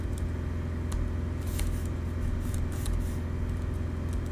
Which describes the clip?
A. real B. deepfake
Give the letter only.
A